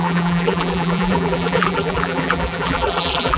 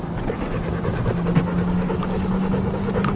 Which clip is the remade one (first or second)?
first